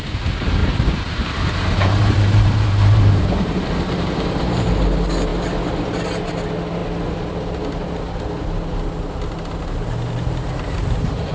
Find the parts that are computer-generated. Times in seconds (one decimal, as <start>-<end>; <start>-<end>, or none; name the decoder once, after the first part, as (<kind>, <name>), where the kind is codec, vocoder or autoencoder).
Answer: 0.6-4.7 (vocoder, BigVGAN v2)